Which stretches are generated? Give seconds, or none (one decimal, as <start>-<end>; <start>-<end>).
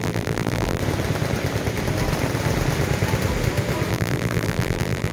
0.0-0.8; 3.9-5.1